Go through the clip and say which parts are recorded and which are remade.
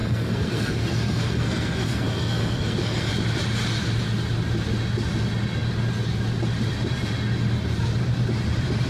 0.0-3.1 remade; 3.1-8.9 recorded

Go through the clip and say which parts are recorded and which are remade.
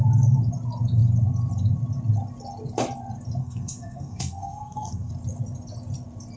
0.0-3.4 recorded; 3.4-5.1 remade; 5.1-6.4 recorded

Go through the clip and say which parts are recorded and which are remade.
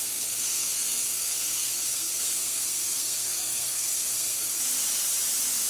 0.0-4.5 remade; 4.5-5.7 recorded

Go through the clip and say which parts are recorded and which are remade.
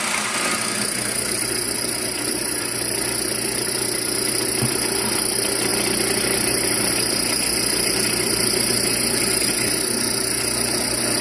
0.0-11.2 recorded